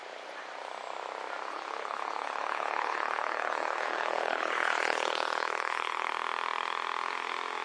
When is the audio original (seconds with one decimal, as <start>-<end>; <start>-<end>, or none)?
0.0-1.5; 6.1-7.6